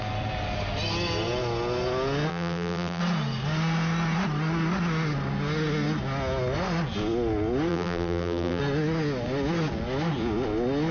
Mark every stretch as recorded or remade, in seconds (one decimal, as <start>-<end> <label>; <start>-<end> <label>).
0.0-2.3 recorded; 2.3-3.0 remade; 3.0-7.7 recorded; 7.7-8.6 remade; 8.6-10.9 recorded